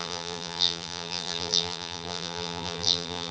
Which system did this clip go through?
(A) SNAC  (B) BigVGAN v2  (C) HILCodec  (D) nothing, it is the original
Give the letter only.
B